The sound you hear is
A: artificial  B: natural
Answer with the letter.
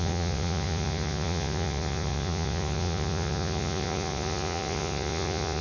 A